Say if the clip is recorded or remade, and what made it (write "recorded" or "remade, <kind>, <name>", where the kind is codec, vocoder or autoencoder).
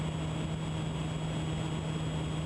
recorded